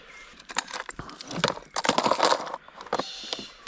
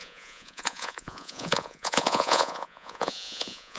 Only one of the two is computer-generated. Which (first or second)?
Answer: second